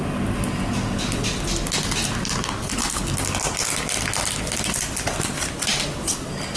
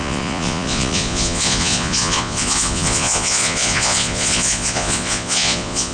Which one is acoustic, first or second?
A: first